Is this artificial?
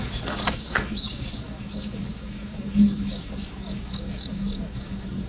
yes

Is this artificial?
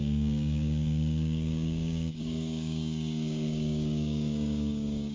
yes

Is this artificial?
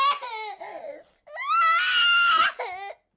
no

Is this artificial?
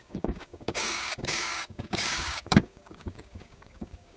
yes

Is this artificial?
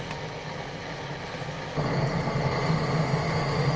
no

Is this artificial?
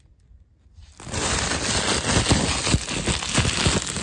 no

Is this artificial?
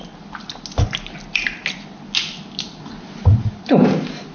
no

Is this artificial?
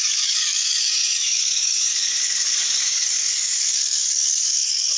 yes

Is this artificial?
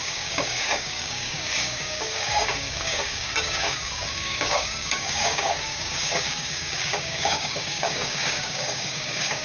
yes